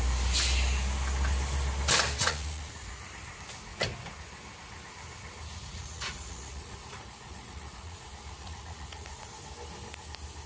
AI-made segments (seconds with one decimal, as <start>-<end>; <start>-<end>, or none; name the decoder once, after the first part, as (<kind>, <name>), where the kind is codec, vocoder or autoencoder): 2.2-3.1 (vocoder, Vocos); 5.7-9.3